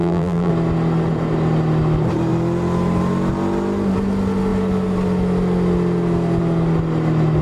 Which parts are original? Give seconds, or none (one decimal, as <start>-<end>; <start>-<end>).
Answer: 0.5-7.4